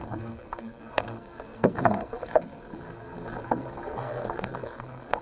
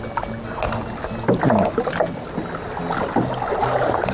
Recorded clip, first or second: second